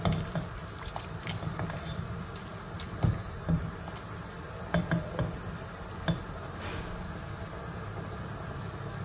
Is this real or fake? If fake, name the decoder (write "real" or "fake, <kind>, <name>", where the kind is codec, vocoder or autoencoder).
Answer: real